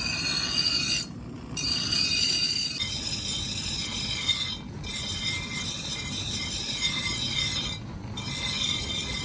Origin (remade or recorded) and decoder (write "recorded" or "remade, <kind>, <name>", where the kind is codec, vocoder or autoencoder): recorded